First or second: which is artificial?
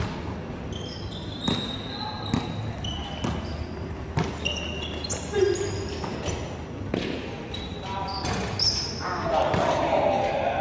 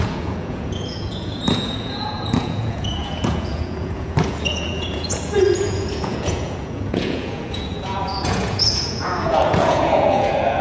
second